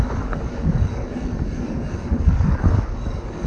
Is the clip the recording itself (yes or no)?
no